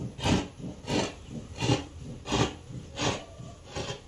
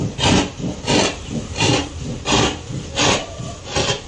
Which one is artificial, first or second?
second